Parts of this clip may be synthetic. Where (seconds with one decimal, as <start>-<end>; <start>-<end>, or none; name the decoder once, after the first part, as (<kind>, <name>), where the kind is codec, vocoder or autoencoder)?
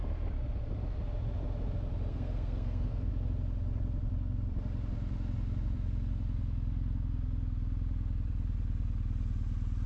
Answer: 2.1-3.1 (codec, SNAC)